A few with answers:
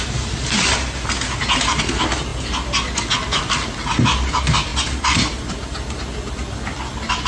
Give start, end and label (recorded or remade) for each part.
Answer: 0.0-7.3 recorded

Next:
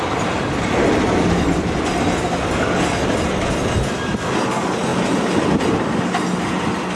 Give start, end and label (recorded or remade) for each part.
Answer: 0.0-7.0 recorded